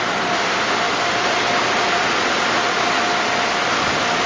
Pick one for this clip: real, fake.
real